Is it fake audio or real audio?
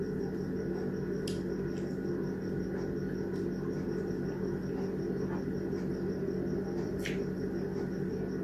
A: real